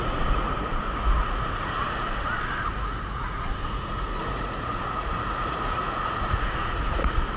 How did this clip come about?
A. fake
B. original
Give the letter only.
A